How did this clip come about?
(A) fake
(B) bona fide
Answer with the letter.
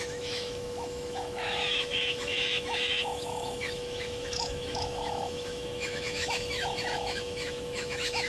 A